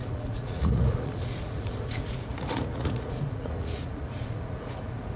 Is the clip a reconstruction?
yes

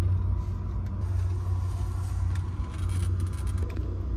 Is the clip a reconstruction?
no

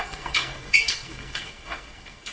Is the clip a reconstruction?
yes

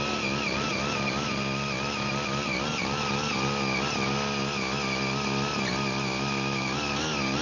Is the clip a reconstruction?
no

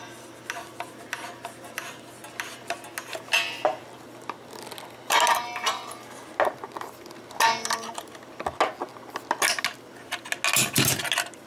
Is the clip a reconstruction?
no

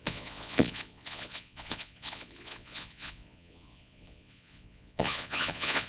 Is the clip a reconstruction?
yes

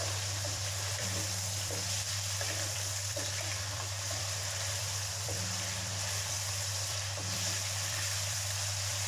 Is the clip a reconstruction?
yes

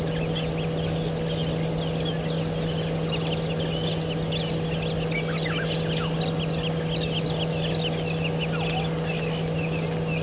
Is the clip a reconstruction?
no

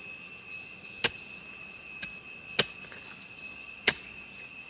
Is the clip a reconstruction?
no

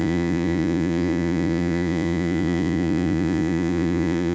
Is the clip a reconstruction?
yes